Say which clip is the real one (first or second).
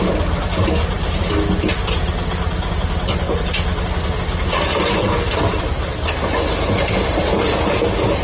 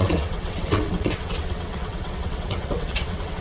first